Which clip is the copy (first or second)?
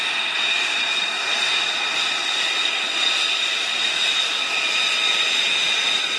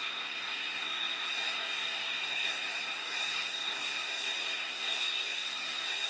second